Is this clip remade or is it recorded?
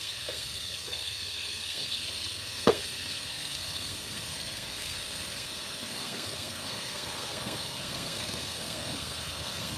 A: remade